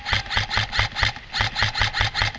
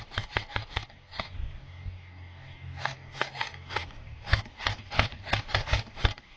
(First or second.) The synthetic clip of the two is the second